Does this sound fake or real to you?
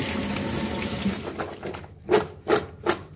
real